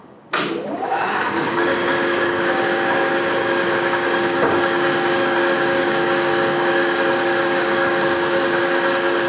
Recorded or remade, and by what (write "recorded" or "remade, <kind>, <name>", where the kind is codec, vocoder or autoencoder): remade, codec, DAC